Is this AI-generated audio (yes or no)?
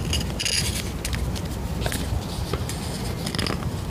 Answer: no